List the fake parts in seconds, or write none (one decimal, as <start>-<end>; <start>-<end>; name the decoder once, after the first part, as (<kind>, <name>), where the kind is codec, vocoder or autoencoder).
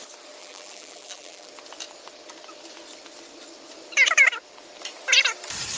0.4-1.5 (vocoder, BigVGAN v2)